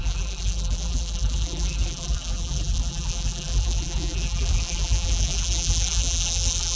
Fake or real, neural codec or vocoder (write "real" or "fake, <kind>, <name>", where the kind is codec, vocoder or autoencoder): fake, vocoder, BigVGAN v2